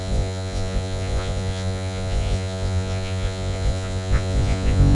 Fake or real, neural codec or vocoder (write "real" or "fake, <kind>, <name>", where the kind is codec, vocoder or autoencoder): fake, vocoder, Vocos